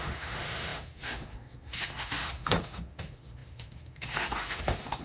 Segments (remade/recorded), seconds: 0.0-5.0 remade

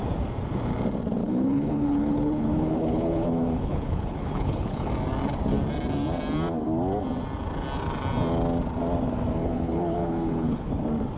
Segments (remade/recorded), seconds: 0.0-1.2 recorded; 1.2-4.9 remade; 4.9-9.4 recorded; 9.4-10.7 remade; 10.7-11.2 recorded

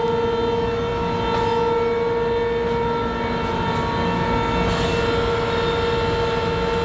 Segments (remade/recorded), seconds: 0.0-6.8 recorded

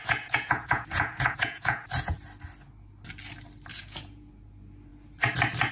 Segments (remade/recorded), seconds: 0.0-1.8 remade; 1.8-3.7 recorded; 3.7-4.3 remade; 4.3-5.7 recorded

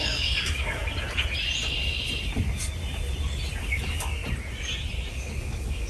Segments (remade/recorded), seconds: 0.0-0.8 remade; 0.8-3.7 recorded; 3.7-4.2 remade; 4.2-5.1 recorded; 5.1-5.9 remade